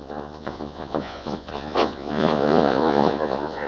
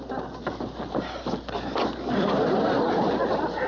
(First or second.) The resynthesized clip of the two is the first